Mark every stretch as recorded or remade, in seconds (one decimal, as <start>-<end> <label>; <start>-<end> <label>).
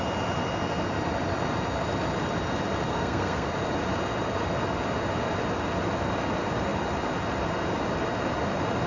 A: 0.0-2.9 recorded; 2.9-3.5 remade; 3.5-8.9 recorded